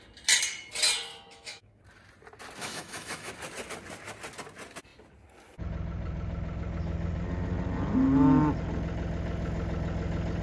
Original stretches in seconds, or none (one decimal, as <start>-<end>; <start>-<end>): 0.0-1.1; 1.8-2.6; 3.3-10.4